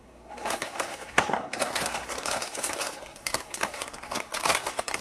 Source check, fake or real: fake